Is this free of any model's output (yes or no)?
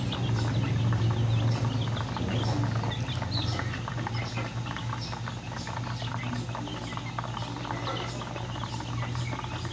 yes